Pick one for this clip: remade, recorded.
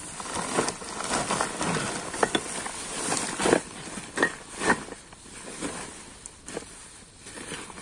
recorded